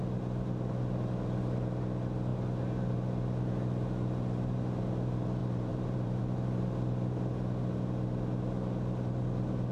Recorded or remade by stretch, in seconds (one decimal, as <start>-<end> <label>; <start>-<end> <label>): 0.0-5.4 recorded; 5.4-6.2 remade; 6.2-9.7 recorded